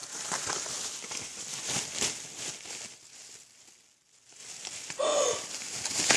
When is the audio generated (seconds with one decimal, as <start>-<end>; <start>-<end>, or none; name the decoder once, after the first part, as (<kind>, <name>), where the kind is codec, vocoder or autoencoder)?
none